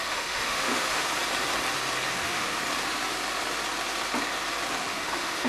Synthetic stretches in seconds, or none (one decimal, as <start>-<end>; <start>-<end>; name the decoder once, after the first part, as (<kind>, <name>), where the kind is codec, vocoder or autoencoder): 0.0-1.1 (autoencoder, DAC-VAE); 2.2-2.6; 4.8-5.5